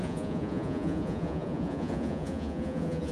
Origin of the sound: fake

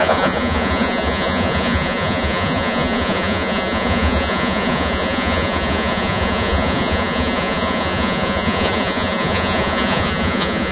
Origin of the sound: fake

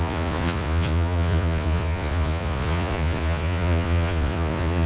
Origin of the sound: fake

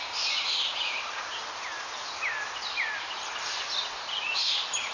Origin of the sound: real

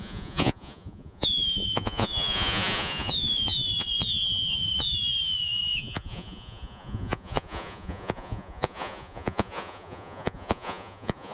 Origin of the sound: fake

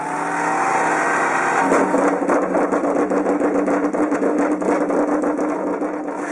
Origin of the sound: real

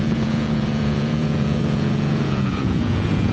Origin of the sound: fake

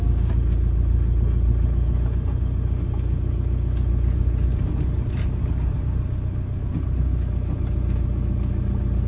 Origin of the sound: real